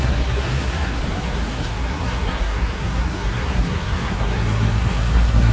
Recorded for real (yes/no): no